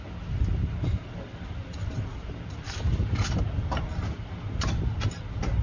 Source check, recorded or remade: recorded